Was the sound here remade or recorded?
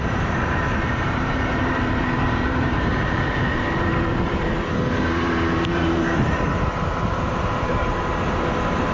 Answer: remade